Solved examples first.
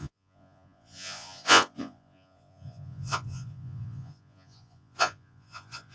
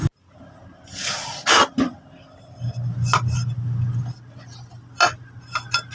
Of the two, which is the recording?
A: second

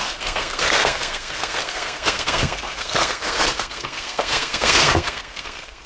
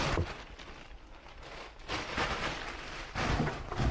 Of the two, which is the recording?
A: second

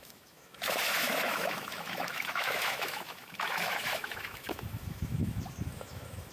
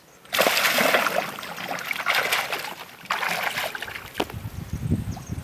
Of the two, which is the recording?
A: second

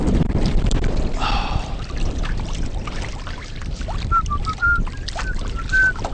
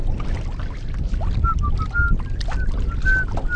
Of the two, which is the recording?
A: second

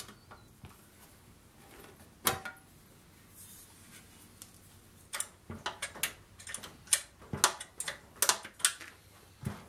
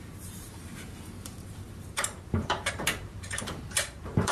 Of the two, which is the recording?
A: first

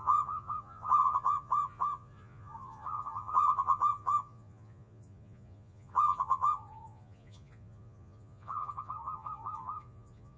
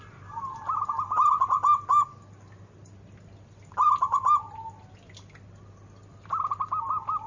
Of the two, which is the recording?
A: second